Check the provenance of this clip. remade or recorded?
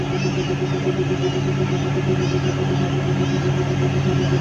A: recorded